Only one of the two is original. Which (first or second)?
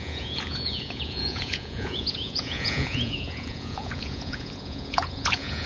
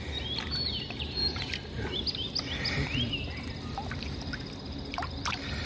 second